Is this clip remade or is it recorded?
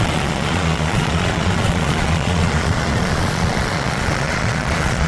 remade